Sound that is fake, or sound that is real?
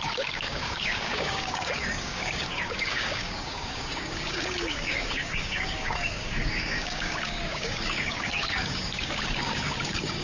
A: fake